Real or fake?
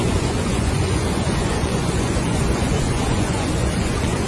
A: fake